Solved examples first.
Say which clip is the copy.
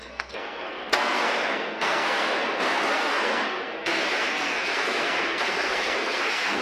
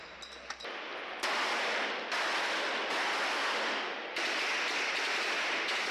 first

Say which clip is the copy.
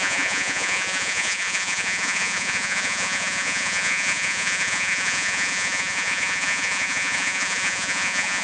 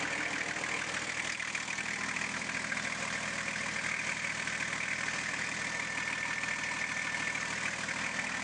first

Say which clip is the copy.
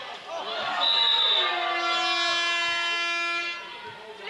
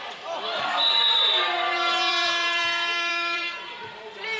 second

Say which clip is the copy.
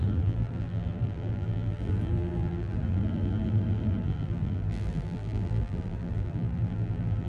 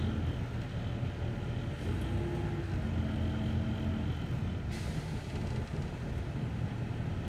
first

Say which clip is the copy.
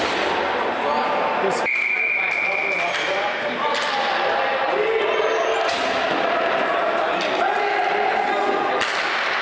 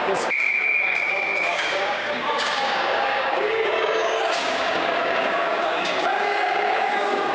second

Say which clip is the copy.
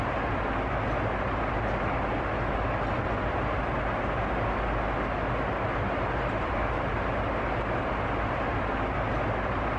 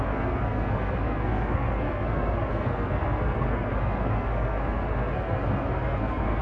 second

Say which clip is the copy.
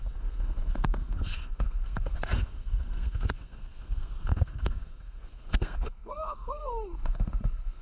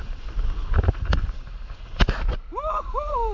first